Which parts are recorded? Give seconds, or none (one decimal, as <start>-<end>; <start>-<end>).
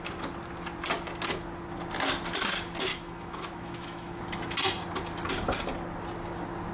0.0-2.9; 4.2-6.7